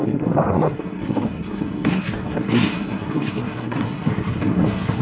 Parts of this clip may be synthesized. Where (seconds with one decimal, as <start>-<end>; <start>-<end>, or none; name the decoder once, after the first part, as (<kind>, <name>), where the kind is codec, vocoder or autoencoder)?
0.0-5.0 (codec, SNAC)